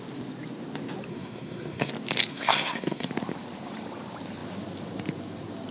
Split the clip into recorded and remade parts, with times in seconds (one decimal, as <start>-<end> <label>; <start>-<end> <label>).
0.0-1.1 recorded; 1.1-1.9 remade; 1.9-2.3 recorded; 2.3-3.1 remade; 3.1-5.7 recorded